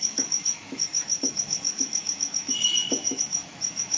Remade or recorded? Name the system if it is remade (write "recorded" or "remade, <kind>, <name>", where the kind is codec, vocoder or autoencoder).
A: remade, autoencoder, DAC-VAE